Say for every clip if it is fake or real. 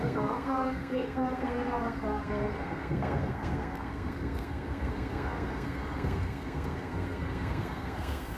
fake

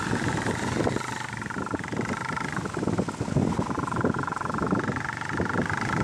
real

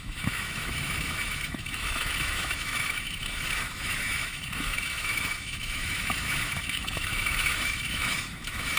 fake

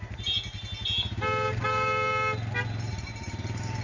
fake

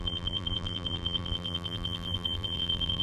fake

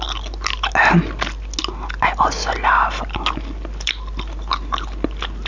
real